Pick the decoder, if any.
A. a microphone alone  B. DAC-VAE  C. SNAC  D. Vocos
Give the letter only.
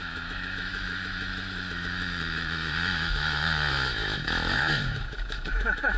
B